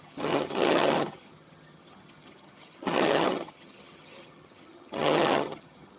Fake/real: fake